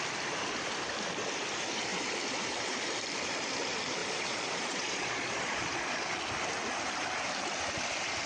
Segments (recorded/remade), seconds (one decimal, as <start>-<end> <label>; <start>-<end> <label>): 0.0-4.0 recorded; 4.0-6.2 remade; 6.2-8.3 recorded